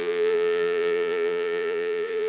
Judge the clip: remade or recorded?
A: remade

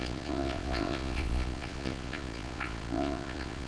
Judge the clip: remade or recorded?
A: remade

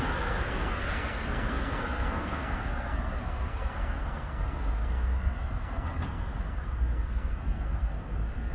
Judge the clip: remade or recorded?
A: remade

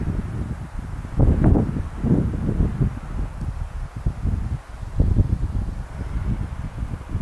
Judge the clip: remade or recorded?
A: recorded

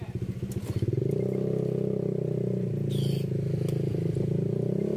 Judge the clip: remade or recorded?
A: recorded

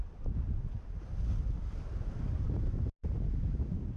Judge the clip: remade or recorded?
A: recorded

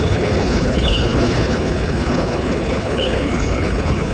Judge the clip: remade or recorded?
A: remade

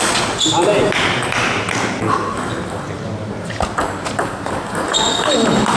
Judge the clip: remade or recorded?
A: recorded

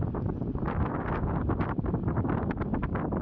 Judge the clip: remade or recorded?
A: recorded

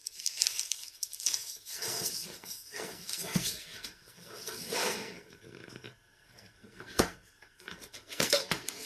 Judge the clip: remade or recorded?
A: remade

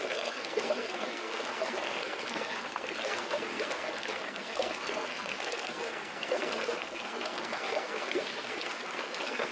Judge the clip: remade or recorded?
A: remade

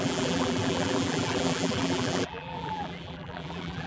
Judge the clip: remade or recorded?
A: remade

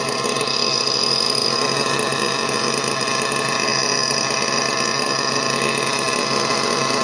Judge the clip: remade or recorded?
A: recorded